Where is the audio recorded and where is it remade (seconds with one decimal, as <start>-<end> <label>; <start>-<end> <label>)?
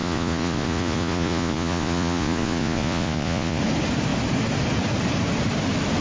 0.0-3.6 remade; 3.6-6.0 recorded